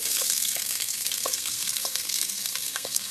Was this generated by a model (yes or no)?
yes